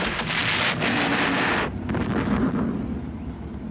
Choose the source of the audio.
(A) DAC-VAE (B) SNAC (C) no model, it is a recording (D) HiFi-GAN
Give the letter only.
C